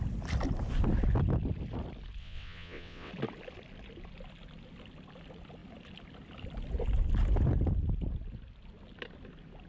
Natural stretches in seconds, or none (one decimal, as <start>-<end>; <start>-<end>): 0.0-2.2; 3.1-9.7